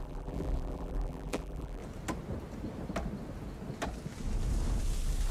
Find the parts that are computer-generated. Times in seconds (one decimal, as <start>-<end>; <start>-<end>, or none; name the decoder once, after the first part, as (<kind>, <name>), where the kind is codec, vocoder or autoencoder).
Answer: 0.0-1.8 (vocoder, BigVGAN v2)